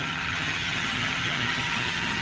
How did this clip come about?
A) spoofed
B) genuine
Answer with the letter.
A